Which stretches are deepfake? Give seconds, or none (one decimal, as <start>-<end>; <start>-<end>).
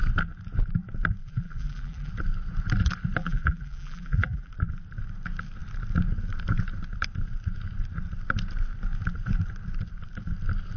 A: 1.2-2.1; 3.2-4.5